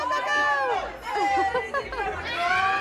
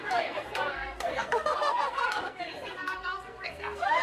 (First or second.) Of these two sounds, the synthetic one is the second